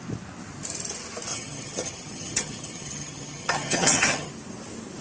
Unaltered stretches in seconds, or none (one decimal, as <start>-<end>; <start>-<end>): 0.0-1.3; 4.3-5.0